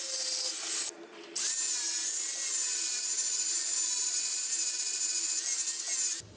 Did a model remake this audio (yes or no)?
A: no